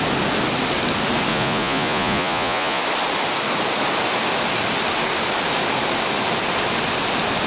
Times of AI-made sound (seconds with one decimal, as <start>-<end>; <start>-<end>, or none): 1.3-2.8